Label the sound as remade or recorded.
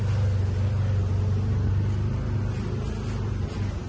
recorded